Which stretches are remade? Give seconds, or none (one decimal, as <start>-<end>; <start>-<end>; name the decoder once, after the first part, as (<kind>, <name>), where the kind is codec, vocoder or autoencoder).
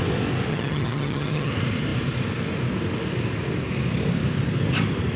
0.5-1.5 (vocoder, HiFi-GAN)